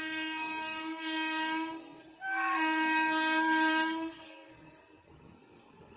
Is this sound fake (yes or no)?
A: yes